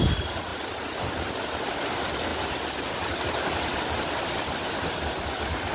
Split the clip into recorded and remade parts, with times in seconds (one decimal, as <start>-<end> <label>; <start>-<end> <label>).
0.0-5.7 recorded